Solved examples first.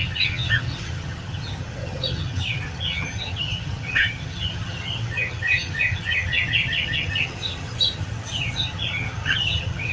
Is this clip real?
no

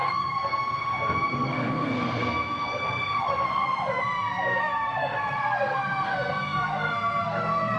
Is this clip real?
no